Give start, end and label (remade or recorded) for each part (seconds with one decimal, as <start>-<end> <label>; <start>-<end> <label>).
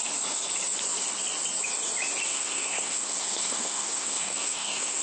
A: 0.0-2.3 recorded; 2.3-5.0 remade